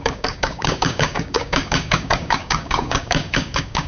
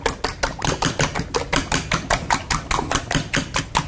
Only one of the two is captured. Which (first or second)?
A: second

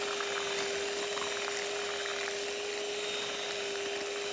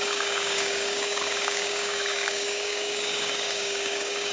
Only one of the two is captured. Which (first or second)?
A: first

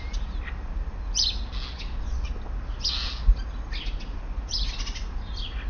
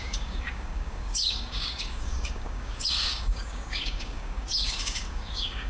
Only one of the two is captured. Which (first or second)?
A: first